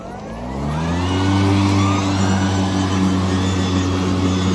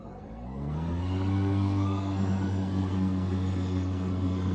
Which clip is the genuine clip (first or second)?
first